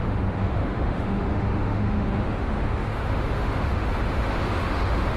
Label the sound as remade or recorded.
remade